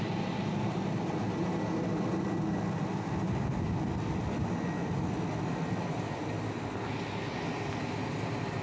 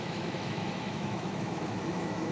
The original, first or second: first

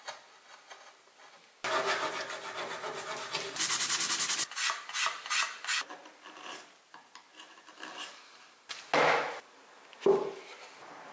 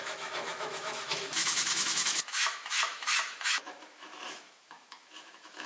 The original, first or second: first